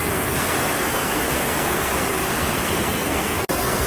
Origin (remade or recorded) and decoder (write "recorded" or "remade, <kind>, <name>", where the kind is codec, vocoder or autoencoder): remade, codec, SNAC